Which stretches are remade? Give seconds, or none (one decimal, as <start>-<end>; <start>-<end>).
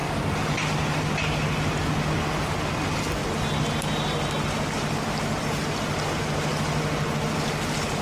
none